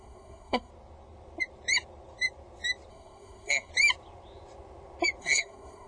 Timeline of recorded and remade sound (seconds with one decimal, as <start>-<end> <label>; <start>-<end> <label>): 0.0-0.7 remade; 0.7-2.9 recorded; 2.9-3.7 remade; 3.7-5.2 recorded; 5.2-5.9 remade